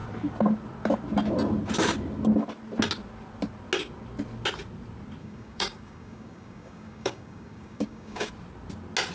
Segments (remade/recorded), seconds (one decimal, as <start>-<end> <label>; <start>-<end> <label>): 0.0-5.2 recorded; 5.2-8.3 remade; 8.3-9.1 recorded